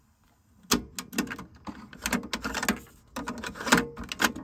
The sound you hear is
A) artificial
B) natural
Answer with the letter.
B